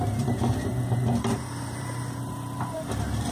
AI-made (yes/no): yes